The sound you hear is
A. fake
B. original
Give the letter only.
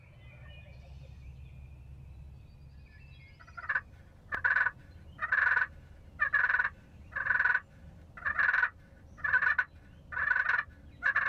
B